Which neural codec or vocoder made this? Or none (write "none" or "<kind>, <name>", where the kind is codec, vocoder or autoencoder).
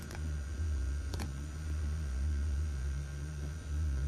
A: vocoder, Vocos